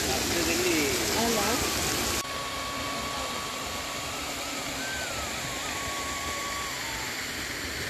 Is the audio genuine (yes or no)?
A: yes